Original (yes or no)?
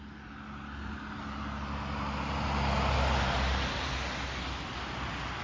yes